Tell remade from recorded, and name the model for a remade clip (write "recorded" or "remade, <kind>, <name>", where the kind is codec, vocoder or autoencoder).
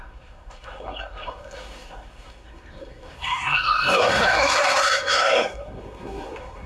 remade, codec, SNAC